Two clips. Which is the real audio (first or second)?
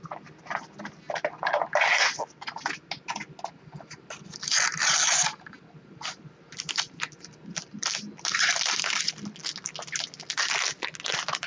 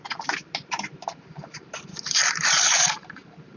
first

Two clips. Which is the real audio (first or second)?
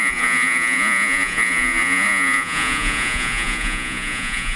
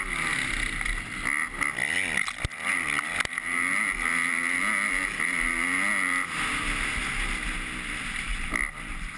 second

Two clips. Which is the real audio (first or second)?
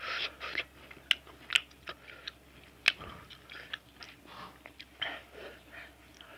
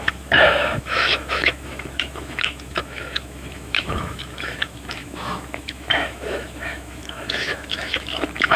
first